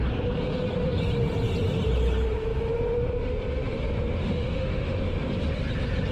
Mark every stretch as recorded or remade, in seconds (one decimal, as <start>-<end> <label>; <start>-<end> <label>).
0.0-4.2 recorded; 4.2-5.0 remade; 5.0-6.1 recorded

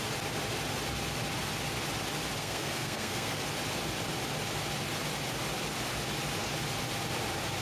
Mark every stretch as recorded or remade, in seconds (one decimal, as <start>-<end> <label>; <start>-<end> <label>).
0.0-2.4 recorded; 2.4-3.5 remade; 3.5-7.6 recorded

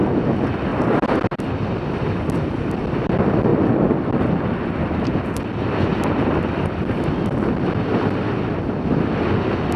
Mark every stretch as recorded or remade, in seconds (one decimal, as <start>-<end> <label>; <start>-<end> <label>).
0.0-0.7 recorded; 0.7-1.7 remade; 1.7-3.5 recorded; 3.5-5.1 remade; 5.1-5.9 recorded; 5.9-9.3 remade; 9.3-9.8 recorded

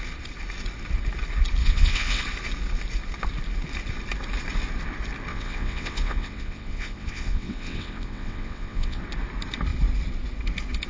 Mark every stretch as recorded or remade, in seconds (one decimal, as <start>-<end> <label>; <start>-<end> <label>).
0.0-1.6 recorded; 1.6-2.2 remade; 2.2-5.3 recorded; 5.3-9.0 remade; 9.0-10.9 recorded

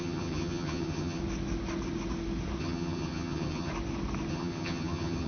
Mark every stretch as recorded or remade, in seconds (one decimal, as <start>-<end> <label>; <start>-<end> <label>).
0.0-1.2 remade; 1.2-2.6 recorded; 2.6-3.7 remade; 3.7-4.3 recorded; 4.3-5.3 remade